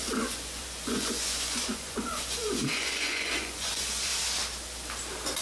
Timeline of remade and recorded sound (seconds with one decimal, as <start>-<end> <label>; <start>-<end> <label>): 0.0-4.1 remade; 4.1-5.4 recorded